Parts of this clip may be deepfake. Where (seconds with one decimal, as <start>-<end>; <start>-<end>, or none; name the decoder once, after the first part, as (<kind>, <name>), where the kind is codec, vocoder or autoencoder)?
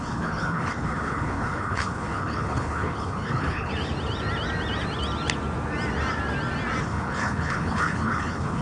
0.0-3.7 (codec, HILCodec); 6.8-8.6